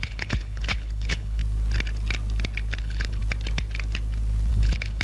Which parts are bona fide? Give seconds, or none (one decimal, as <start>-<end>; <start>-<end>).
1.4-2.8; 3.2-4.5